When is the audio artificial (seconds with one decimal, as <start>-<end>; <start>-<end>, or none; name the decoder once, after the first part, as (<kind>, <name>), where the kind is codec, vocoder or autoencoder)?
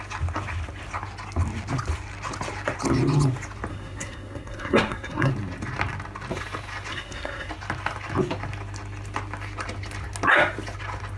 3.7-5.3 (codec, SNAC); 6.9-7.5